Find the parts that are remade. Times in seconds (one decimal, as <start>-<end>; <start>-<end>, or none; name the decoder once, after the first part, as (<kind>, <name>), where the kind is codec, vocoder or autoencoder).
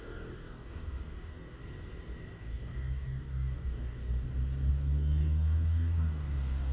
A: 0.0-1.6 (codec, DAC); 2.4-4.1; 4.7-6.7